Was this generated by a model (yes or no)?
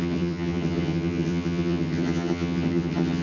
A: yes